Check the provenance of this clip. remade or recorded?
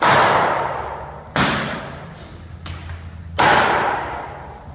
recorded